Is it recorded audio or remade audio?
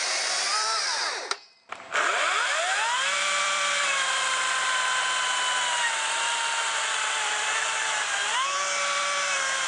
remade